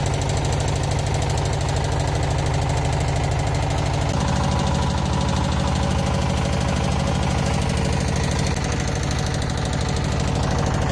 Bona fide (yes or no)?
yes